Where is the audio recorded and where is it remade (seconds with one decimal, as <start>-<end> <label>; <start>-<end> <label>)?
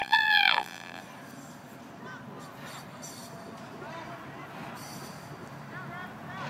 0.0-1.0 remade; 1.0-6.5 recorded